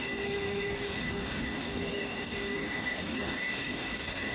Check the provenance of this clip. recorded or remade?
remade